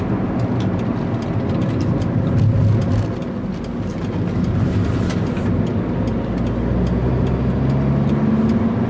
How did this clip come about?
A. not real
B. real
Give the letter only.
B